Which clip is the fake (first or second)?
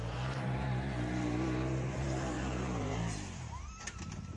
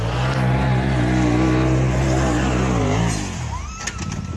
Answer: first